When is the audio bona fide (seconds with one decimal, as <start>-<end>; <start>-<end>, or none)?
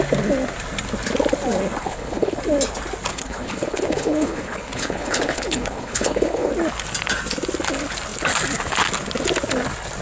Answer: 0.0-1.8; 2.4-3.1; 6.5-10.0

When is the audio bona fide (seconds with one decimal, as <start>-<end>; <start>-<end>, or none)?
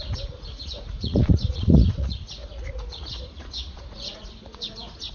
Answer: none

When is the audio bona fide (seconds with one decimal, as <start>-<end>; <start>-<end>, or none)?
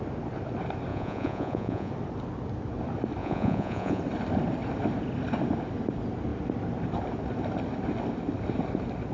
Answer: 0.0-0.9; 1.9-3.2; 4.0-9.1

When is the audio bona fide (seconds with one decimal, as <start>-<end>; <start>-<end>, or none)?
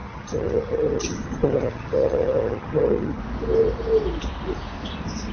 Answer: 3.2-5.3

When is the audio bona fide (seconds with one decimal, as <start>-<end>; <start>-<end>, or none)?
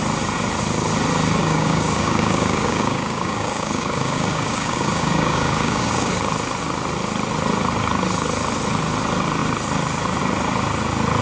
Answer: 0.0-1.4; 6.1-11.2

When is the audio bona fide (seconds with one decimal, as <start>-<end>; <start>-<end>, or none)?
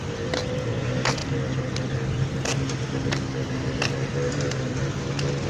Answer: 0.0-5.5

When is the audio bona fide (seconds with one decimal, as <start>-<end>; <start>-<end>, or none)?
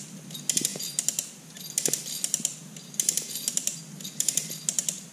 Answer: 0.0-5.1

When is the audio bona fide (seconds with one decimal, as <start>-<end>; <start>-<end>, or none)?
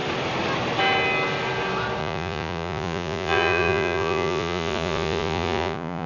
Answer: 0.0-2.0